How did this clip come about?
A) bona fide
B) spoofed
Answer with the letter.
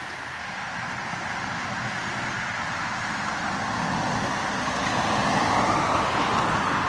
A